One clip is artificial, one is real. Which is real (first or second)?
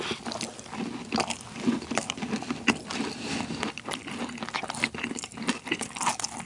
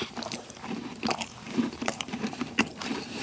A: first